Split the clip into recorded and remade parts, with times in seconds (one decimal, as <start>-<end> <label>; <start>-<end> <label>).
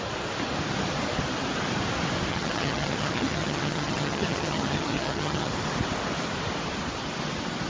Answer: 0.0-2.3 recorded; 2.3-5.5 remade; 5.5-7.7 recorded